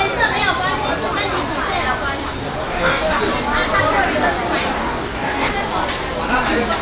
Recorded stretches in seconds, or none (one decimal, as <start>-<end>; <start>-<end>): 0.0-2.6; 3.2-4.8; 5.5-6.8